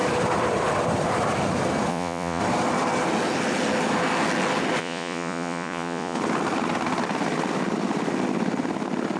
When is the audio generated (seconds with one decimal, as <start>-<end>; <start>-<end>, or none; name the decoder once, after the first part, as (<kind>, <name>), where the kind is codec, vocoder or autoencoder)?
1.9-2.4 (vocoder, Vocos); 4.8-6.2